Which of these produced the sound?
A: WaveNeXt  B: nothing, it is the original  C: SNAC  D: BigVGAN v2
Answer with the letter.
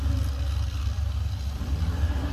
B